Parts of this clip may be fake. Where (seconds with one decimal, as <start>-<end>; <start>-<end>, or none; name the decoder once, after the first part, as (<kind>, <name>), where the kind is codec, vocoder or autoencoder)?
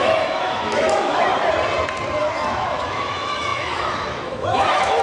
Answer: 0.0-1.3 (autoencoder, DAC-VAE); 2.2-5.0